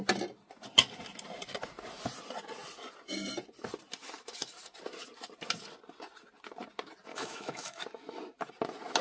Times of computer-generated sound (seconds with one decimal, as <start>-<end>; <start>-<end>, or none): 7.1-7.8